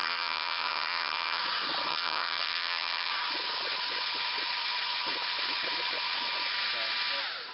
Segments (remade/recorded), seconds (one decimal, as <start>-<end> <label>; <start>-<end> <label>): 0.0-1.4 remade; 1.4-1.9 recorded; 1.9-3.1 remade; 3.1-7.5 recorded